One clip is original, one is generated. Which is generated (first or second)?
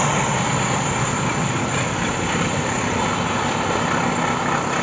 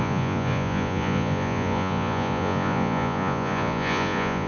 second